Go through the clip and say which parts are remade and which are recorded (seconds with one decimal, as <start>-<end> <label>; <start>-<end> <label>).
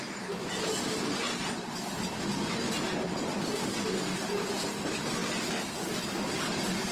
0.0-6.9 recorded